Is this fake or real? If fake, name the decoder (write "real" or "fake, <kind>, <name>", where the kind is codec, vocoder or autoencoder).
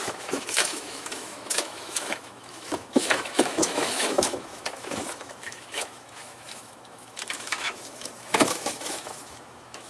fake, autoencoder, DAC-VAE